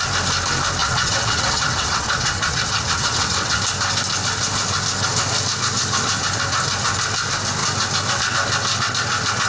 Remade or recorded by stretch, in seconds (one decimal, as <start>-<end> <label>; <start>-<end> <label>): 0.0-0.8 recorded; 0.8-3.6 remade; 3.6-9.5 recorded